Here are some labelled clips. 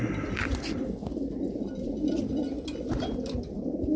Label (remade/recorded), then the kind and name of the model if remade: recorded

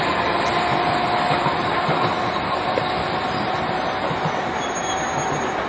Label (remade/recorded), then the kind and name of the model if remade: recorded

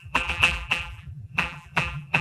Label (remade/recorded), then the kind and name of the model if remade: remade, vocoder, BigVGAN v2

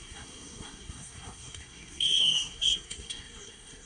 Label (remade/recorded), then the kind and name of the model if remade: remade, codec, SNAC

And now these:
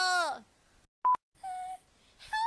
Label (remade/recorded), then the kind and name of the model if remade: recorded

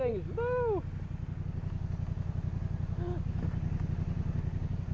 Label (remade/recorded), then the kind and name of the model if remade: recorded